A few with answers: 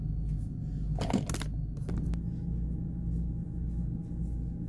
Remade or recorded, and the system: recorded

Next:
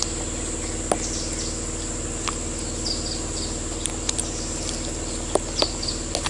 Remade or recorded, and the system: recorded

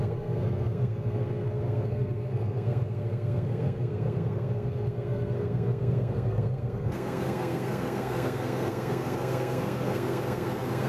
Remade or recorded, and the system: remade, codec, SNAC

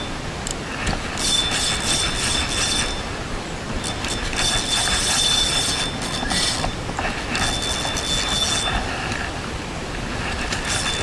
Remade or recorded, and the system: recorded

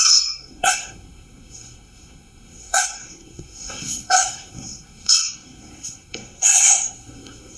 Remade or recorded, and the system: remade, codec, SNAC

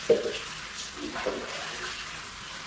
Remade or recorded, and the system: recorded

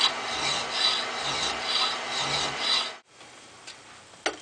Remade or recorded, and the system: recorded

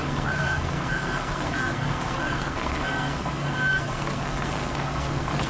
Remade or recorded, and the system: remade, codec, SNAC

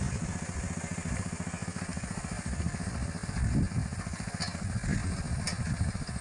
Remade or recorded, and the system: recorded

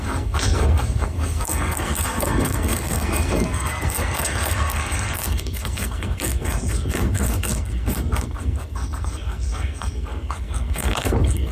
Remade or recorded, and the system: remade, codec, SNAC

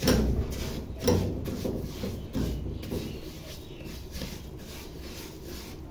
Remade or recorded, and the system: recorded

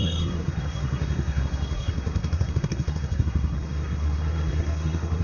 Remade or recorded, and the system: remade, codec, SNAC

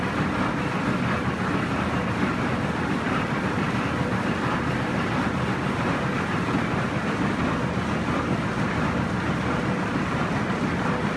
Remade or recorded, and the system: recorded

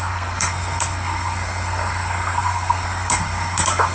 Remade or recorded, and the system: remade, codec, SNAC